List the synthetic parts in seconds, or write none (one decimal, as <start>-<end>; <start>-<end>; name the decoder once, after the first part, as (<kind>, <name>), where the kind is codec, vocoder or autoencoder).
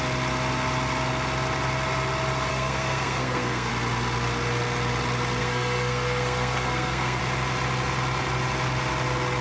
2.5-3.7 (codec, SNAC); 5.4-7.2